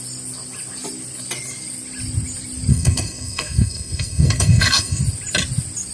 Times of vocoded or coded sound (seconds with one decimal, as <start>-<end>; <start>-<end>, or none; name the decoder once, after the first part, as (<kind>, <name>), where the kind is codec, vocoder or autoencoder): 2.7-5.0 (codec, SNAC)